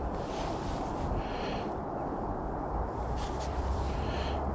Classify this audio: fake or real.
real